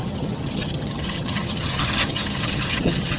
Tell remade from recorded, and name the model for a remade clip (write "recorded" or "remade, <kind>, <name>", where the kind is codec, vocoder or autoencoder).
remade, vocoder, HiFi-GAN